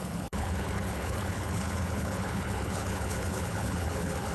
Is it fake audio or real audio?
fake